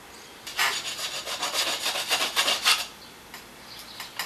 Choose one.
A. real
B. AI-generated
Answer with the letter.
A